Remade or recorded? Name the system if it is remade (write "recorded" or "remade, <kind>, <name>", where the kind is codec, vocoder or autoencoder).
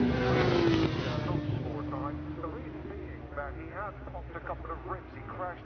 recorded